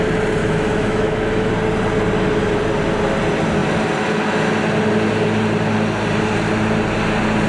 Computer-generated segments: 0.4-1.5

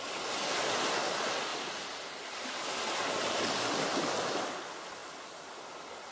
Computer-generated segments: 1.5-4.4; 5.0-5.6